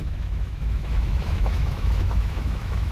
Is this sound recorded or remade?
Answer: remade